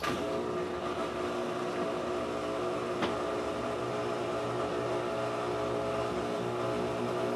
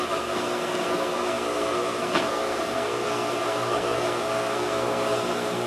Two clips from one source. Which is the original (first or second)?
first